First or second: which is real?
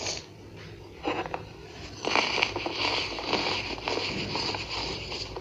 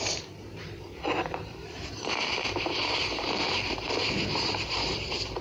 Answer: first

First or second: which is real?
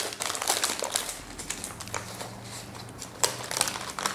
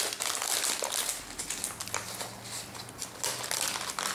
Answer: second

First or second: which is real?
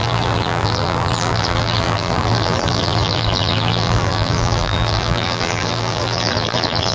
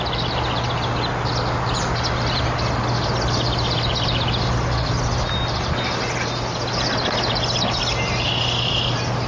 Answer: second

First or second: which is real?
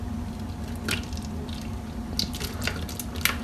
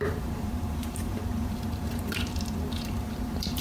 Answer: first